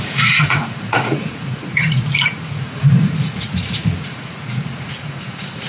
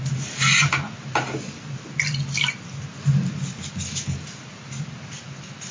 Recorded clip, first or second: second